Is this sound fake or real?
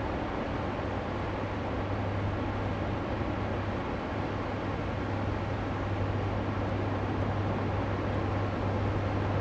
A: real